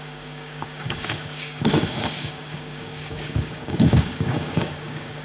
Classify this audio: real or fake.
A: fake